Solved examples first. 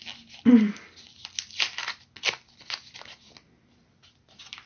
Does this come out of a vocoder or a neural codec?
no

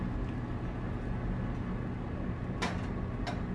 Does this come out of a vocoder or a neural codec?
no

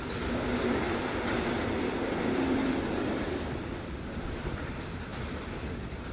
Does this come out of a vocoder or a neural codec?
no